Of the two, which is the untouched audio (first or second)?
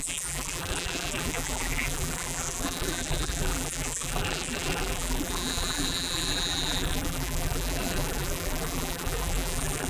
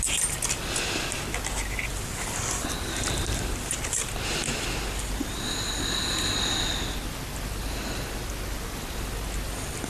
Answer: second